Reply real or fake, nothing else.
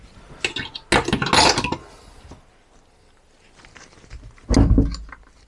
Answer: real